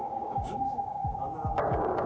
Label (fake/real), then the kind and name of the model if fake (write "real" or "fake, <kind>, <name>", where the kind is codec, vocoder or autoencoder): fake, codec, DAC